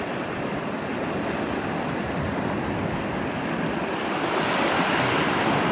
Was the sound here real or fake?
real